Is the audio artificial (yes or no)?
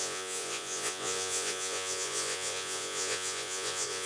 yes